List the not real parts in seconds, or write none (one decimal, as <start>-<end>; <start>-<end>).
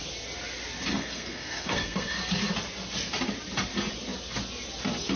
0.9-2.2